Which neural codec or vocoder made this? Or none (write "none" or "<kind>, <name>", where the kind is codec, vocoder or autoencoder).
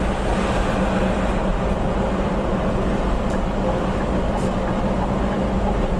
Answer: none